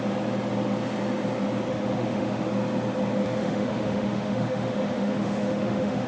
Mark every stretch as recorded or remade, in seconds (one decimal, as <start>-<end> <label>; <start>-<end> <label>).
0.0-1.7 recorded; 1.7-2.5 remade; 2.5-3.4 recorded; 3.4-6.1 remade